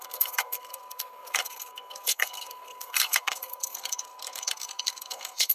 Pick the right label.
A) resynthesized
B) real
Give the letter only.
A